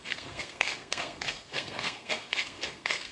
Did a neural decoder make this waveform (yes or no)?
yes